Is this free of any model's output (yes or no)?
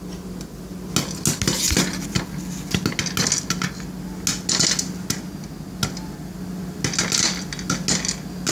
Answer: yes